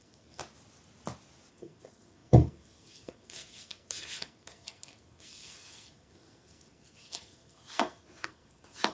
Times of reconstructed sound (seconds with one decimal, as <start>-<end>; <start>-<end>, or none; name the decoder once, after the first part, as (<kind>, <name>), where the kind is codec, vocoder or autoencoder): 0.0-0.4 (codec, SNAC); 1.5-8.9